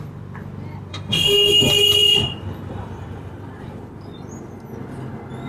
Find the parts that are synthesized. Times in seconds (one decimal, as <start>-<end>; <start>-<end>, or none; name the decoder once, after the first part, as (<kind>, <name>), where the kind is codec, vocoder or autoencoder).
0.9-1.5 (autoencoder, DAC-VAE)